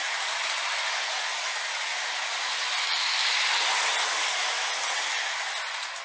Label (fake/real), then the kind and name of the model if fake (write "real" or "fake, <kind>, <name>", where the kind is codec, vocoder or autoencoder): real